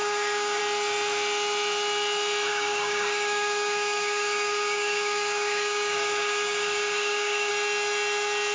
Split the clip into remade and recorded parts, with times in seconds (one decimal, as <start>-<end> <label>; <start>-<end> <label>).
0.0-0.6 remade; 0.6-2.5 recorded; 2.5-7.5 remade; 7.5-8.5 recorded

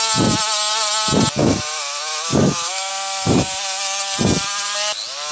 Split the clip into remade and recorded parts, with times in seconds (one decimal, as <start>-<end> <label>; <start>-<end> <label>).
0.0-1.4 recorded; 1.4-2.9 remade; 2.9-5.3 recorded

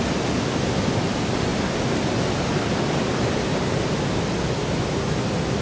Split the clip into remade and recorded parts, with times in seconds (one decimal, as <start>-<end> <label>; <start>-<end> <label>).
0.0-5.6 recorded

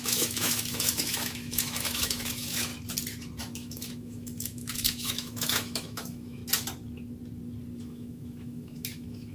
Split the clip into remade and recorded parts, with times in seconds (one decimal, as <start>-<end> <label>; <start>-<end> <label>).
0.0-2.7 remade; 2.7-3.4 recorded; 3.4-6.4 remade; 6.4-7.8 recorded; 7.8-9.3 remade

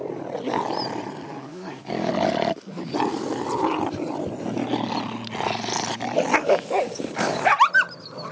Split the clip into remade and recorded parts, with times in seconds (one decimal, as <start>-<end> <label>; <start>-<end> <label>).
0.0-1.5 recorded; 1.5-2.1 remade; 2.1-6.4 recorded; 6.4-7.5 remade; 7.5-8.3 recorded